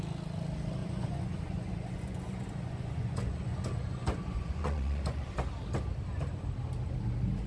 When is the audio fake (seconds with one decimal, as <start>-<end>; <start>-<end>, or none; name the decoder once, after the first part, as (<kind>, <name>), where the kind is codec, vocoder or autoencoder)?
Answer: 0.8-5.3 (vocoder, Vocos)